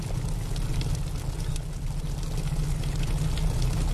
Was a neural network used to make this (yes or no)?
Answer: no